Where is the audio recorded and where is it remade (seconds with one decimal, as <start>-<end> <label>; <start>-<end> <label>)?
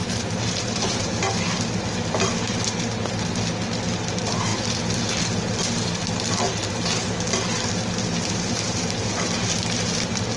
0.0-1.1 remade; 1.1-8.2 recorded; 8.2-9.1 remade; 9.1-10.4 recorded